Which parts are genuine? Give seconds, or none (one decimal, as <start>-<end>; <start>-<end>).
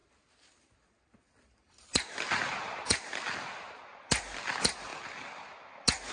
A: 0.0-6.1